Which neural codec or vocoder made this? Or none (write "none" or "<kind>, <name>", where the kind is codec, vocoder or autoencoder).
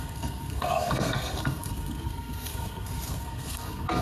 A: codec, SNAC